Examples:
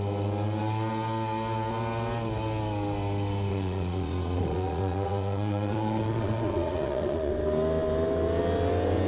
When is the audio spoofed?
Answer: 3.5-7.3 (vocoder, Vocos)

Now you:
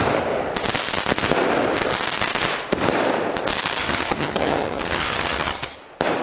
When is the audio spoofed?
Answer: 3.8-5.8 (vocoder, HiFi-GAN)

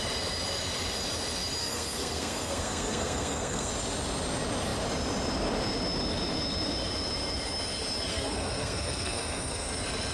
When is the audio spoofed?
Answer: 1.6-3.7 (codec, SNAC); 8.1-9.7

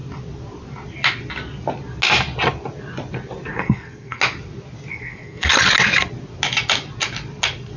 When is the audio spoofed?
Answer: 3.5-4.2 (codec, SNAC); 4.9-5.5